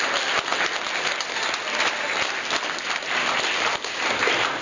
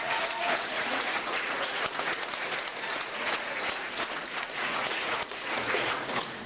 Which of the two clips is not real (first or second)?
second